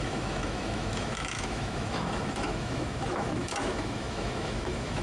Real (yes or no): no